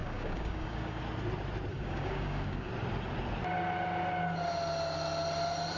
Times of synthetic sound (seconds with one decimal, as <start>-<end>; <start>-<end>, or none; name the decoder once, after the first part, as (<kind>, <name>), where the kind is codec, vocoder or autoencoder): 0.0-1.0 (codec, DAC); 1.7-2.7